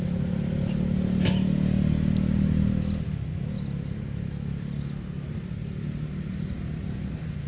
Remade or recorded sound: recorded